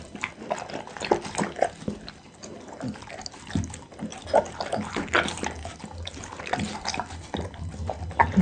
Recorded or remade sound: recorded